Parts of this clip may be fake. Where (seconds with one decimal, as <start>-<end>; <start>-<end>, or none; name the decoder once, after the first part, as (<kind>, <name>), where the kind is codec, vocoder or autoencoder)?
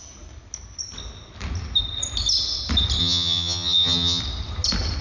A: 3.0-4.2 (vocoder, HiFi-GAN)